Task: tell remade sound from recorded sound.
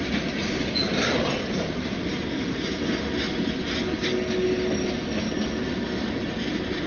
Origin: recorded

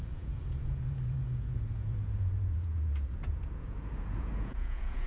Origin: remade